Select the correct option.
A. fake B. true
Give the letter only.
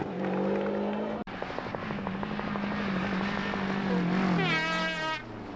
B